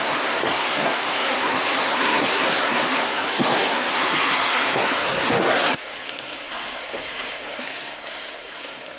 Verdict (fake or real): fake